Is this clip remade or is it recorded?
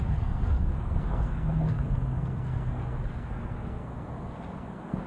remade